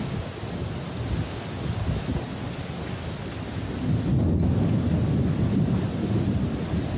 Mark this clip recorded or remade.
recorded